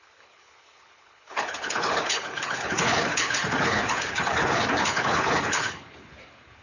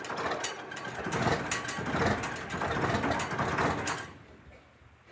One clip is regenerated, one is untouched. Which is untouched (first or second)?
second